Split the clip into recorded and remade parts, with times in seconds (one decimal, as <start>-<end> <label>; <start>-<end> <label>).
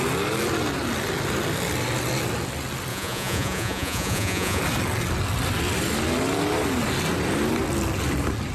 0.0-2.9 recorded; 2.9-4.6 remade; 4.6-8.5 recorded